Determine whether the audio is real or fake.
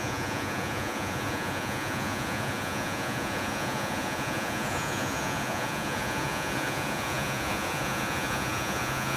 fake